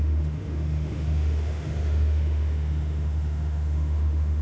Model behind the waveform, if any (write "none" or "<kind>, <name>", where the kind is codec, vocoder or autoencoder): autoencoder, DAC-VAE